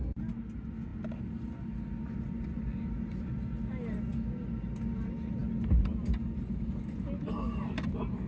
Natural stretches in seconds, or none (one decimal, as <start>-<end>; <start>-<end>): 0.0-8.3